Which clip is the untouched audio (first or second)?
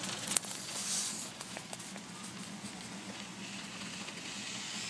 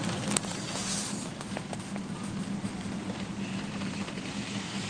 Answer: second